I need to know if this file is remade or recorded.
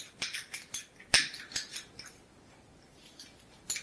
recorded